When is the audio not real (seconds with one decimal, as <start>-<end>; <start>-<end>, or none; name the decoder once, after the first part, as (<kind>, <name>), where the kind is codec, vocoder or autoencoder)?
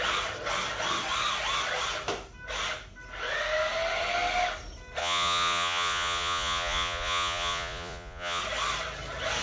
5.0-8.4 (vocoder, Vocos)